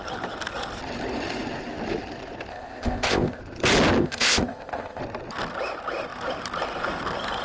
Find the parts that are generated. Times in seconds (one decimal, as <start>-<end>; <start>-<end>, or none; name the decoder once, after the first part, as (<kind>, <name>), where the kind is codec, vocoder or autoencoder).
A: 2.5-3.4 (codec, ZipCodec); 4.0-5.0

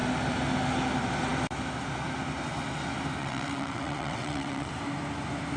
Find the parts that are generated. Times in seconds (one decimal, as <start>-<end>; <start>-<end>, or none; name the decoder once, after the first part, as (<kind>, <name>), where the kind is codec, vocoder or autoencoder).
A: 3.2-4.7 (vocoder, WaveNeXt)

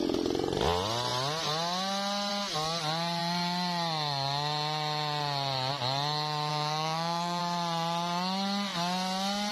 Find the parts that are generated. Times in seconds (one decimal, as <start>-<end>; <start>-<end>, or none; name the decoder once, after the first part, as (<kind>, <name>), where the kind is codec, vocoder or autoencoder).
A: 6.5-7.4 (codec, SNAC)

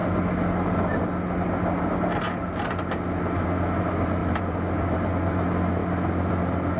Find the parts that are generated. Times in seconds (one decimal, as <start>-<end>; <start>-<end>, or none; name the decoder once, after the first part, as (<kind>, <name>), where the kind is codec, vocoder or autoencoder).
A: 4.2-5.1 (vocoder, BigVGAN v2)